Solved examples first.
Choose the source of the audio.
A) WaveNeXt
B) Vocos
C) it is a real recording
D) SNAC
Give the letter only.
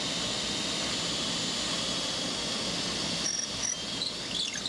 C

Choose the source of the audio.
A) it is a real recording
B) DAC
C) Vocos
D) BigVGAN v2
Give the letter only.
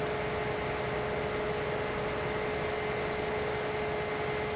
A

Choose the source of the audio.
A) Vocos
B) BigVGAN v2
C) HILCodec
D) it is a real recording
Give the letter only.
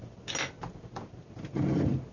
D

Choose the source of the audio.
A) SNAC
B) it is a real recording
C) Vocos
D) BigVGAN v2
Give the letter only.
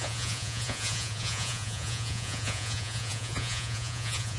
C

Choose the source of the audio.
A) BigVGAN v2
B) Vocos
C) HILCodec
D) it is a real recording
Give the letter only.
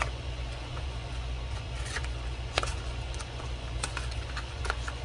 B